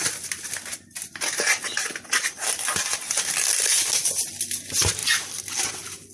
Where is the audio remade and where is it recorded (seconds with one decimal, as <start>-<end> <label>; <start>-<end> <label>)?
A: 0.0-6.1 recorded